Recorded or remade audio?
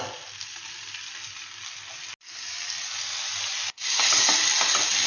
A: recorded